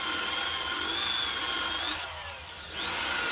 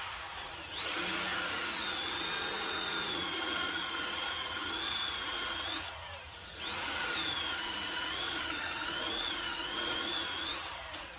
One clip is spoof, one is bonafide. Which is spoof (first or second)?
second